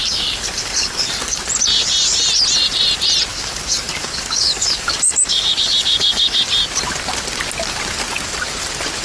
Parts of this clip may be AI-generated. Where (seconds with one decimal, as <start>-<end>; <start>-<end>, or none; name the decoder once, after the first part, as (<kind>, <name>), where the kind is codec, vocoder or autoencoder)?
0.0-1.4 (codec, DAC); 3.3-6.4

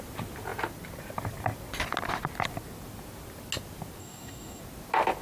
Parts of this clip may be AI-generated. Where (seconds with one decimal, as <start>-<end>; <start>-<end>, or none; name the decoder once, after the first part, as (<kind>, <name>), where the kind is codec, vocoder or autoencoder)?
4.0-4.6 (codec, DAC)